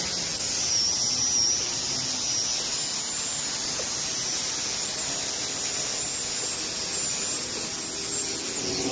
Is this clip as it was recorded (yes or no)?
yes